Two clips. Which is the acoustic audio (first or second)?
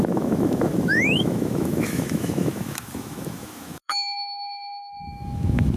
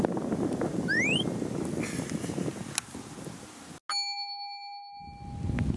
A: second